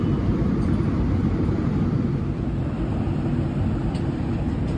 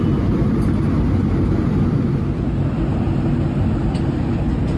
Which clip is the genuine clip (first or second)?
second